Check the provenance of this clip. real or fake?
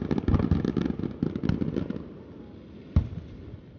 real